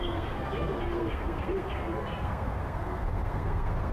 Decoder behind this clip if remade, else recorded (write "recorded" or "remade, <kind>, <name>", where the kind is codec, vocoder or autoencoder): remade, codec, SNAC